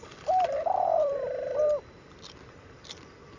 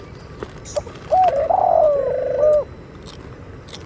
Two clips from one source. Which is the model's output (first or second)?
first